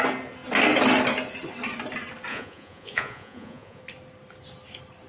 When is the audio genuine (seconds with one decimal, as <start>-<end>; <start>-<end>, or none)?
0.0-2.3; 3.8-5.1